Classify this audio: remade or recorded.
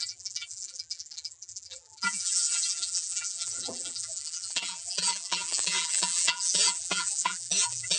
remade